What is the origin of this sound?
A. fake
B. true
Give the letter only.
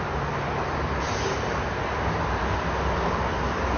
B